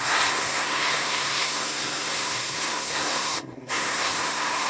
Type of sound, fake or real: fake